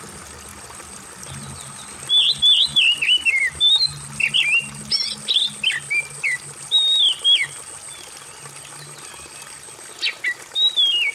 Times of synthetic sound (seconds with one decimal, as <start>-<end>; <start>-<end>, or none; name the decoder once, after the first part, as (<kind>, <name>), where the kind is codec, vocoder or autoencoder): none